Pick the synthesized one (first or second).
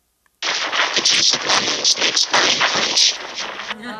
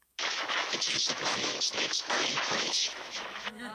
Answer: second